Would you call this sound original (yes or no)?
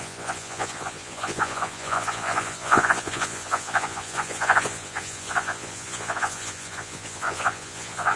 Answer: no